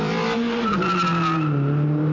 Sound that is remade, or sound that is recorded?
remade